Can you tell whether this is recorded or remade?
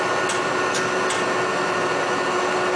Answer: recorded